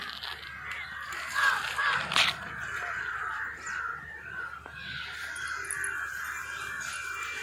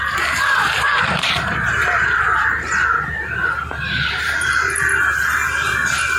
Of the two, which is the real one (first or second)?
first